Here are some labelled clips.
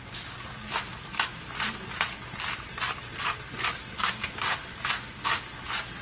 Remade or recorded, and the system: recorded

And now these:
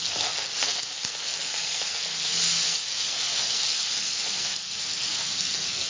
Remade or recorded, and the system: remade, codec, SNAC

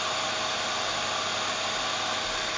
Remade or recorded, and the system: recorded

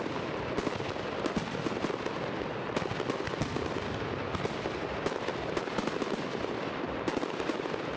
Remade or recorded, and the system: recorded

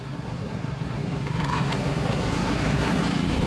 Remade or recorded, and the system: remade, codec, SNAC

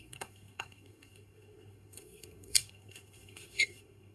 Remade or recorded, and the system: remade, codec, SNAC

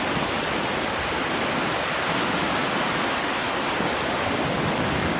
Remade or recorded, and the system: recorded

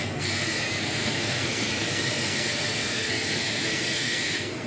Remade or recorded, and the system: remade, codec, SNAC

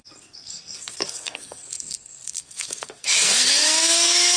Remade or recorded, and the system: remade, codec, SNAC